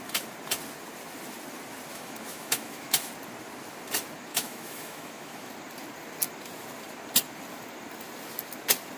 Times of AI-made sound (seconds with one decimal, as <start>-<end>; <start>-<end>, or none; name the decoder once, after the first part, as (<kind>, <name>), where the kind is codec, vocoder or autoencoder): 1.9-3.1 (autoencoder, DAC-VAE); 4.3-5.5